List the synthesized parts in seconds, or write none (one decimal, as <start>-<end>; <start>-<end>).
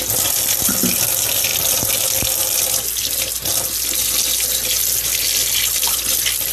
none